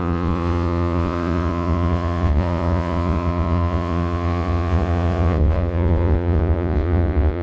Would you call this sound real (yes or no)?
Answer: no